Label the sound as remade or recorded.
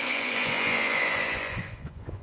remade